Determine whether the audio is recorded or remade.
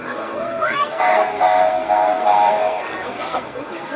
remade